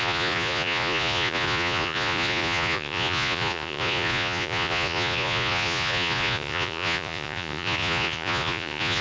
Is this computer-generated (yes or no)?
yes